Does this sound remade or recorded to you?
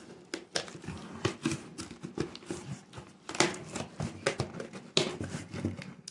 recorded